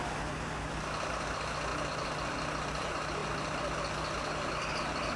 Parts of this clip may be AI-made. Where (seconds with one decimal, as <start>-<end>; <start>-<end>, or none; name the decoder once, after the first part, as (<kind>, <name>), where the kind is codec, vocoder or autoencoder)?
none